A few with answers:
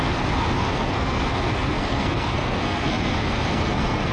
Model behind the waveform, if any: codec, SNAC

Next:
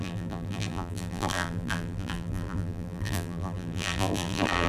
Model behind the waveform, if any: vocoder, BigVGAN v2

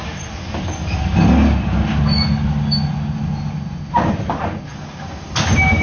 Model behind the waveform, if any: none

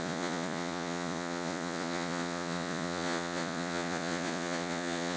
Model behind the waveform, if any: vocoder, Vocos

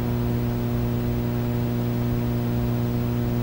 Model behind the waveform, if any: none